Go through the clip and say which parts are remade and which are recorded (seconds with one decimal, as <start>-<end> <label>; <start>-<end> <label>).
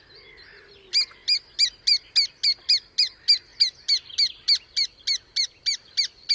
0.0-6.3 recorded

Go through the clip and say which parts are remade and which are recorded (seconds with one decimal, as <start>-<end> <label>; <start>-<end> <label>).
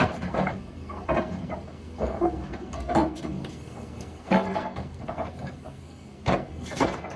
0.0-7.2 remade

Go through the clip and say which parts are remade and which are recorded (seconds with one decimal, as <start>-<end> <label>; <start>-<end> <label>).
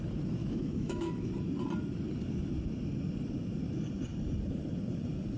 0.0-0.4 recorded; 0.4-1.3 remade; 1.3-5.4 recorded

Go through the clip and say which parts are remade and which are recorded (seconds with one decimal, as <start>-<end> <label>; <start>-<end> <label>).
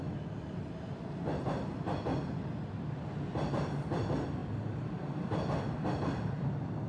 0.0-6.9 recorded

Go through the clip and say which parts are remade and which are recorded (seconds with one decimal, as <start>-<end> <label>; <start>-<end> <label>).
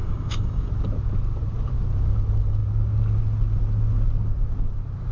0.0-0.7 remade; 0.7-5.1 recorded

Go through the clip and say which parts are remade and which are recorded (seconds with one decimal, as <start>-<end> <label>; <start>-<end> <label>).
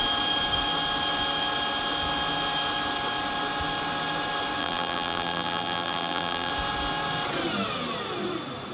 0.0-4.6 recorded; 4.6-6.5 remade; 6.5-8.7 recorded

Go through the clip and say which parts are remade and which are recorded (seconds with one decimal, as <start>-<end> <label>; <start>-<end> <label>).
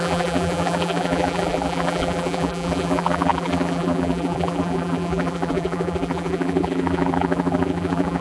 0.0-8.2 remade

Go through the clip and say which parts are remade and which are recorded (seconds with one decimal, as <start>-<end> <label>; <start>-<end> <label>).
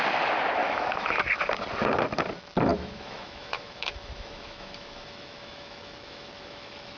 0.0-0.6 recorded; 0.6-1.2 remade; 1.2-2.7 recorded; 2.7-7.0 remade